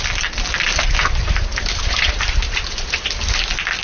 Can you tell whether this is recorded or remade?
recorded